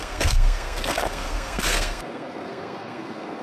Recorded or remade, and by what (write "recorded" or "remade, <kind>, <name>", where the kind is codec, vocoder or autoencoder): remade, codec, SNAC